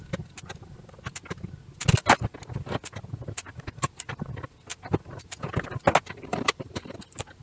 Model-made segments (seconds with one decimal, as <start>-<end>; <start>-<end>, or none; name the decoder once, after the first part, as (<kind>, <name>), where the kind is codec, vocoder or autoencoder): 6.3-7.0 (vocoder, BigVGAN v2)